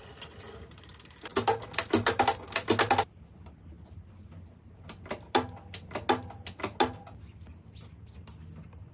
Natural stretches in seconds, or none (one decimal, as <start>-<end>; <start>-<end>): 0.0-8.9